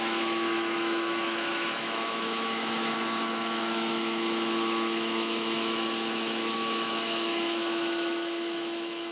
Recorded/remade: remade